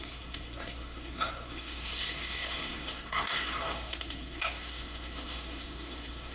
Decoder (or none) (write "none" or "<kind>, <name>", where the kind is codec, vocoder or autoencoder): codec, SNAC